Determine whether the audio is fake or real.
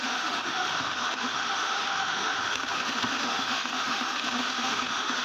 fake